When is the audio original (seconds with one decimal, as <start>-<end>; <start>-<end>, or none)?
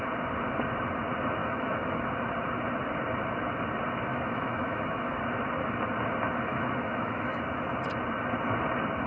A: 0.0-1.4; 2.0-4.1; 5.2-6.5; 7.4-9.1